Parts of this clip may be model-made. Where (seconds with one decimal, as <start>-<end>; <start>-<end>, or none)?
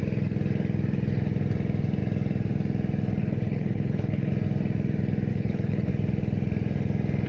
3.2-4.3; 5.3-5.9